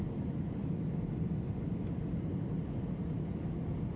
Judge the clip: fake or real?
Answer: real